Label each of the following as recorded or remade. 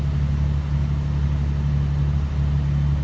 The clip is recorded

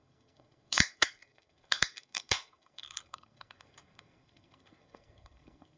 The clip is remade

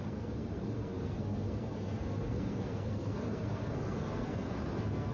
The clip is remade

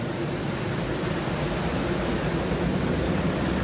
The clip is recorded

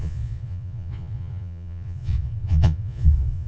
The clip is remade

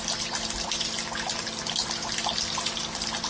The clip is recorded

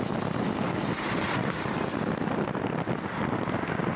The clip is recorded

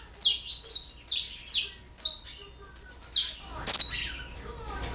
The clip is recorded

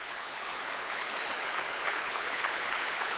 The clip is remade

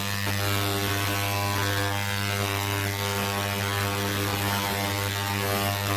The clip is recorded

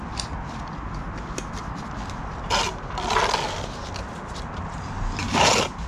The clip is recorded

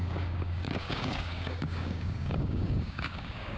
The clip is remade